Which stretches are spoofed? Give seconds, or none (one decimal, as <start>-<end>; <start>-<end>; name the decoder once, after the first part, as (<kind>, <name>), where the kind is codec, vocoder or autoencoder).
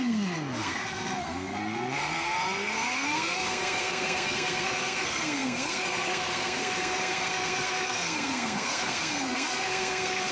0.0-10.3 (codec, SNAC)